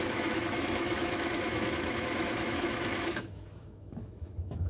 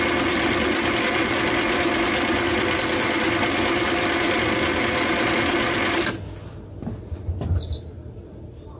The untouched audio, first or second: second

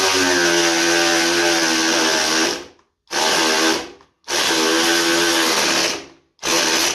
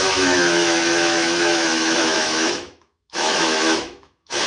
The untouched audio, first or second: first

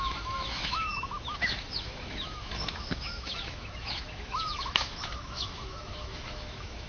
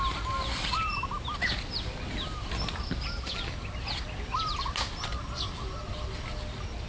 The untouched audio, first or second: second